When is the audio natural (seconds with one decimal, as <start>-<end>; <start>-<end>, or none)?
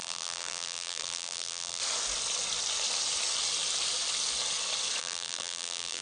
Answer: 1.8-5.0